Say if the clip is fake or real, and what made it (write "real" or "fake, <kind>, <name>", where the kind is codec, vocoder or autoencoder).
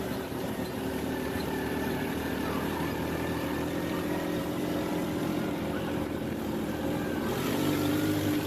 fake, vocoder, BigVGAN v2